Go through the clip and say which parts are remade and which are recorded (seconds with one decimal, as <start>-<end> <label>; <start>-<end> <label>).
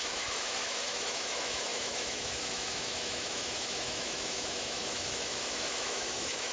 0.0-6.5 remade